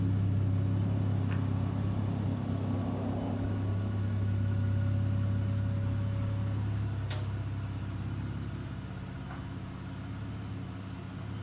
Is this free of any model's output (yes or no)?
yes